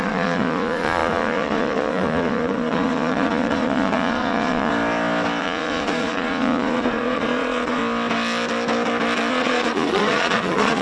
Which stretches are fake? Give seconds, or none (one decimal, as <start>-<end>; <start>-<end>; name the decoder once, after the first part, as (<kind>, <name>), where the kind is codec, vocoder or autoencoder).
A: 0.0-4.7 (vocoder, Vocos); 5.4-7.8; 9.3-10.8